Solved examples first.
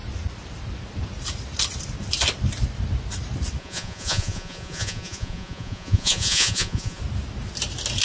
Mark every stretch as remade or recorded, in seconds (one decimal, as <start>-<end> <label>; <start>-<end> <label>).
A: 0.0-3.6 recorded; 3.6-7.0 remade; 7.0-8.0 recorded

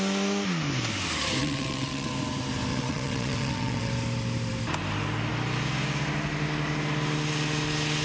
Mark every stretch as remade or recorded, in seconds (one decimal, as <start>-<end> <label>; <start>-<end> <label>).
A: 0.0-1.4 recorded; 1.4-2.1 remade; 2.1-2.7 recorded; 2.7-3.9 remade; 3.9-8.0 recorded

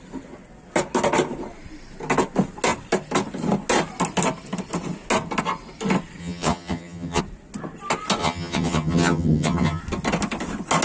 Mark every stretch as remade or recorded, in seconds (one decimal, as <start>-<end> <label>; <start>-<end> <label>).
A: 0.0-6.2 recorded; 6.2-7.2 remade; 7.2-8.2 recorded; 8.2-9.8 remade; 9.8-10.8 recorded

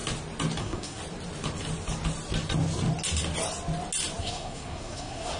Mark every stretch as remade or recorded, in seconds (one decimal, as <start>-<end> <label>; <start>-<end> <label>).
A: 0.0-0.6 recorded; 0.6-1.0 remade; 1.0-4.2 recorded; 4.2-5.4 remade

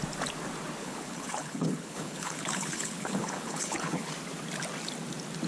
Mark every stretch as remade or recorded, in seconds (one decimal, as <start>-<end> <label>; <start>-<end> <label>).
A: 0.0-0.8 recorded; 0.8-4.1 remade; 4.1-5.5 recorded

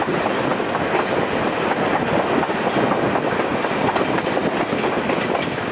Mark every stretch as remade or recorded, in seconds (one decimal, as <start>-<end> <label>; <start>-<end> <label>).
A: 0.0-3.5 recorded; 3.5-4.4 remade; 4.4-5.7 recorded